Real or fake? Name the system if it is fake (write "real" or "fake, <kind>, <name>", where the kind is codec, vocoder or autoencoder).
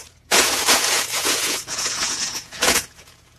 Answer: fake, vocoder, Vocos